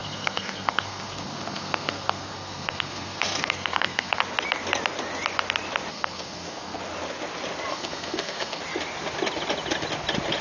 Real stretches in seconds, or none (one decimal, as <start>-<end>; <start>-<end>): 4.2-5.9; 6.8-7.7; 8.6-10.4